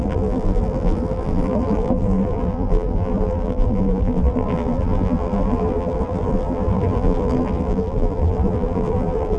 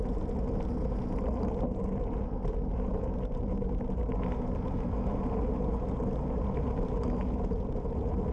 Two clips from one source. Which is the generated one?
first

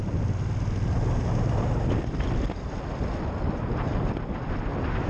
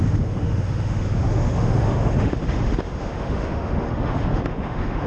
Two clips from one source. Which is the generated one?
second